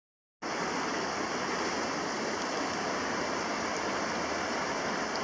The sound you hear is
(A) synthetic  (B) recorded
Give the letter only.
B